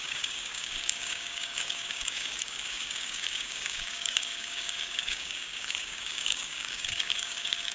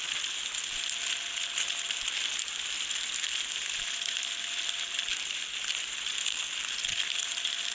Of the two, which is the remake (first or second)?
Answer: first